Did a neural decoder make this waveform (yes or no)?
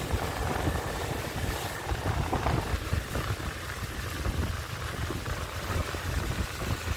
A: no